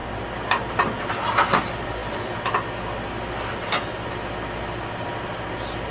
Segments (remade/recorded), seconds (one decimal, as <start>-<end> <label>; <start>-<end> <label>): 0.0-5.9 recorded